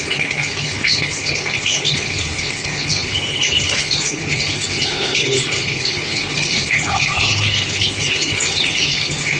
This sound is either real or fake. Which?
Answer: fake